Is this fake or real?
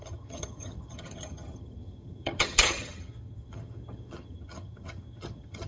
fake